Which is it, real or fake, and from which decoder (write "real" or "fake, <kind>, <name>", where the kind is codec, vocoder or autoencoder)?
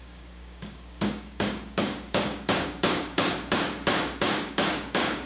fake, codec, DAC